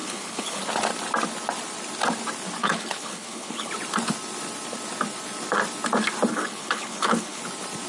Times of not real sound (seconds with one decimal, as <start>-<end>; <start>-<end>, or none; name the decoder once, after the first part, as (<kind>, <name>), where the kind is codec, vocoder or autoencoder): 0.0-0.6 (codec, HILCodec); 2.6-3.7; 6.3-7.4